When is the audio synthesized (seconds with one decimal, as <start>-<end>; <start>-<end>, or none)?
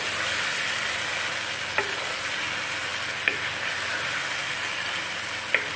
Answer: none